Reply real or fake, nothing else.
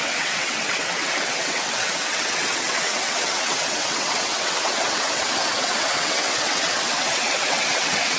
fake